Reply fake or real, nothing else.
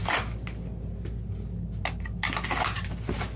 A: real